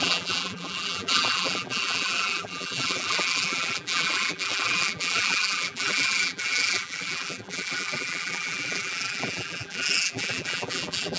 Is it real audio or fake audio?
fake